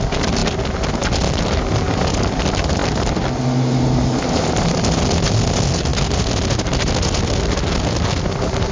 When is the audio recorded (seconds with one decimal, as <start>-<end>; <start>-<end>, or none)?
0.0-8.7

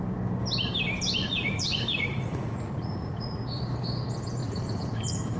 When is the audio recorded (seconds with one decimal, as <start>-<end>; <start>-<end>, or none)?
0.0-1.2; 3.4-4.4